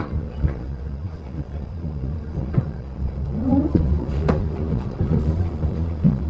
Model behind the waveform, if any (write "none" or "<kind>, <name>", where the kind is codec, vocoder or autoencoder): vocoder, Vocos